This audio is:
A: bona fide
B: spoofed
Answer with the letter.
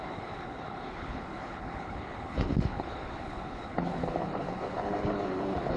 B